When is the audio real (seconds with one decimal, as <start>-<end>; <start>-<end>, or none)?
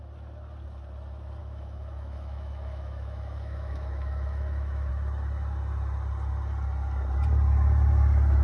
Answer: 0.0-1.4; 4.9-8.4